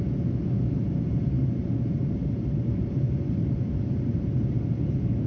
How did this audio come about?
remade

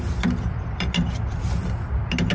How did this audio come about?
recorded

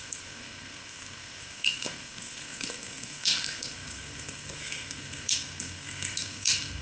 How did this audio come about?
remade